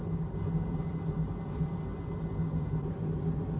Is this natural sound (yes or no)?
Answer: yes